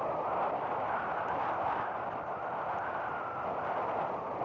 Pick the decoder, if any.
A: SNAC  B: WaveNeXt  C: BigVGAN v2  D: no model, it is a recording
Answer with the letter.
D